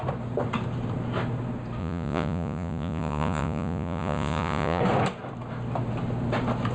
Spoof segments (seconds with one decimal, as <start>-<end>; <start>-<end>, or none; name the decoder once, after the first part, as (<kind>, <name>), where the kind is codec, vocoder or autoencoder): 1.8-4.8 (vocoder, Vocos)